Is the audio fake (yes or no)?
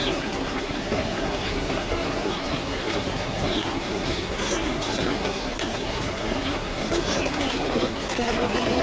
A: yes